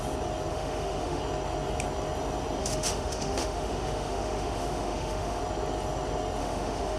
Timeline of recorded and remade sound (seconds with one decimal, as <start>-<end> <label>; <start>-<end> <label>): 0.0-0.5 recorded; 0.5-1.2 remade; 1.2-2.6 recorded; 2.6-5.4 remade; 5.4-6.4 recorded; 6.4-7.0 remade